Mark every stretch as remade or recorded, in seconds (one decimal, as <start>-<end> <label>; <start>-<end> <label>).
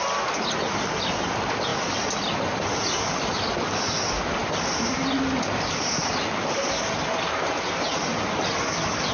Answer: 0.0-9.1 recorded